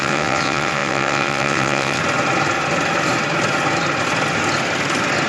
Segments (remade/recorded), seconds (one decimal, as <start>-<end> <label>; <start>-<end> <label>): 0.0-2.0 remade; 2.0-5.3 recorded